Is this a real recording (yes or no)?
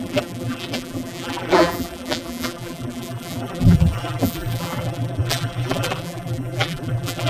no